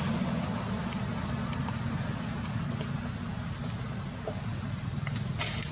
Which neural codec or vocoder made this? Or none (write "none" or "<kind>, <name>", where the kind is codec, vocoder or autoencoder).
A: none